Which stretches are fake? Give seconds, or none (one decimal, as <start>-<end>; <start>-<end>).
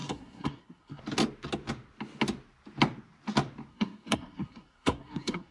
0.0-1.0; 3.7-5.5